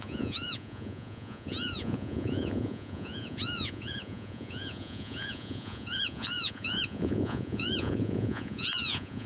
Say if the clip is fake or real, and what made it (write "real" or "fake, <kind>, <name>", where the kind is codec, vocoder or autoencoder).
fake, vocoder, Vocos